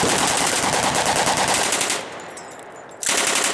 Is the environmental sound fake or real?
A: real